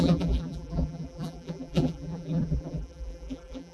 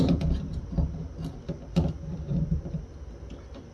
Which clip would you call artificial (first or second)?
first